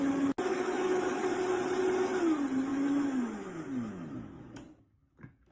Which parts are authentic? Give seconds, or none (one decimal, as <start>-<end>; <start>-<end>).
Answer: 0.0-0.5; 1.3-2.7